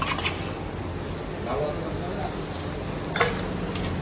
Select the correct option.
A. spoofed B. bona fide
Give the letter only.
B